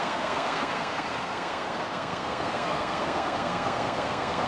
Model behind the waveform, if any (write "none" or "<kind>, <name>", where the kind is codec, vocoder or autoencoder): codec, SNAC